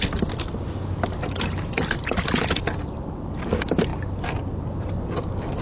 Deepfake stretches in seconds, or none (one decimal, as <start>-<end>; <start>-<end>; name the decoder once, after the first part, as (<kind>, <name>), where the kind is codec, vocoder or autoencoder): none